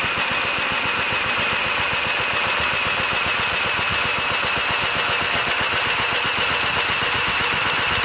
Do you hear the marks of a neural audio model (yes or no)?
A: no